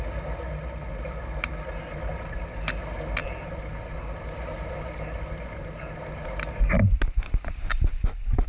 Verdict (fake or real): real